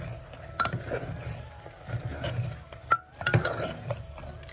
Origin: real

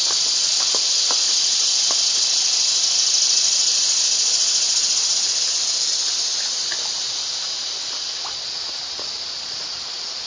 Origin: real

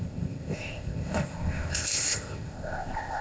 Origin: fake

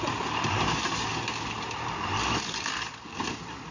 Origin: real